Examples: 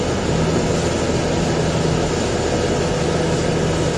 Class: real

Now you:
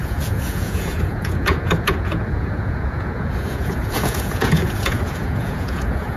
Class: fake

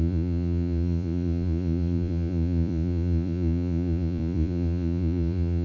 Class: fake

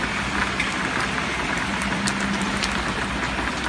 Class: real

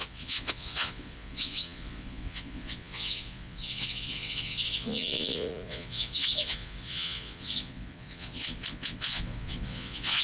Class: fake